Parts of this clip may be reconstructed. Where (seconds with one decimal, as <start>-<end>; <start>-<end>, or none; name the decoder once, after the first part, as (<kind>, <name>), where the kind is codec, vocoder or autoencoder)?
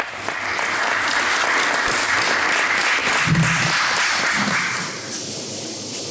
none